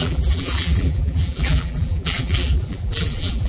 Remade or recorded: remade